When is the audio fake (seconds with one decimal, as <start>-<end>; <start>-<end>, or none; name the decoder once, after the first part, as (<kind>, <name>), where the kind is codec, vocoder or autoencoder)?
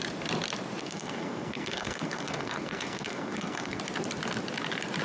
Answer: 0.8-3.8 (codec, SNAC)